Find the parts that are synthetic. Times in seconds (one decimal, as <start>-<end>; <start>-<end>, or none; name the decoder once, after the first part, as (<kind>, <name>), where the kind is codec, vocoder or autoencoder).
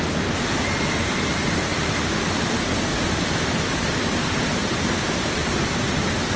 1.7-2.4 (vocoder, BigVGAN v2); 2.9-4.4; 5.4-6.4